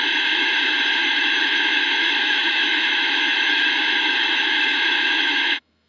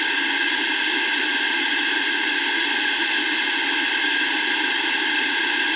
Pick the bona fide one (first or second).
second